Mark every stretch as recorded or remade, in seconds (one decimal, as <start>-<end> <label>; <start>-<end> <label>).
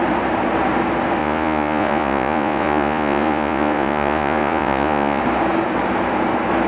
0.0-1.2 recorded; 1.2-5.2 remade; 5.2-6.7 recorded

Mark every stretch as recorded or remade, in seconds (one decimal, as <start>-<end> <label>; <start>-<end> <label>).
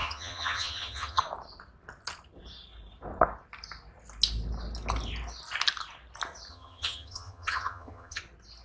0.0-1.2 remade; 1.2-6.5 recorded; 6.5-8.2 remade; 8.2-8.6 recorded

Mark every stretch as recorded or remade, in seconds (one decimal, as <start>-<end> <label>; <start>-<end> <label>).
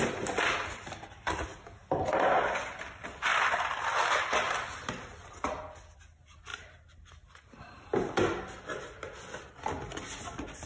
0.0-10.7 recorded